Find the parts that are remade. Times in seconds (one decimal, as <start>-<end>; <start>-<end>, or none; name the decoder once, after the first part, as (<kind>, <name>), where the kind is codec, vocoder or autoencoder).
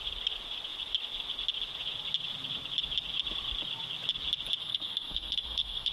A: 4.6-5.9 (codec, SNAC)